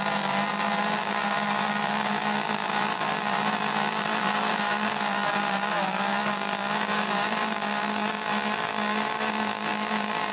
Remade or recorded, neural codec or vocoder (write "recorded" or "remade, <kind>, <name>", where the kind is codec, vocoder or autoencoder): remade, vocoder, BigVGAN v2